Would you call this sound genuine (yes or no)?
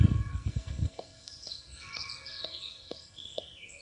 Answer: no